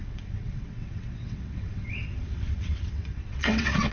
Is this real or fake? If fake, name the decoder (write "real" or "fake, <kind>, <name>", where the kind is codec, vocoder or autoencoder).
fake, vocoder, WaveNeXt